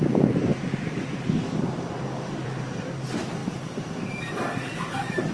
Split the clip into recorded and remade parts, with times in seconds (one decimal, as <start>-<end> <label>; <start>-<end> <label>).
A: 0.0-5.3 remade